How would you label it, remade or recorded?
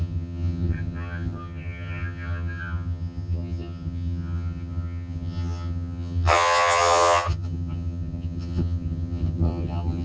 remade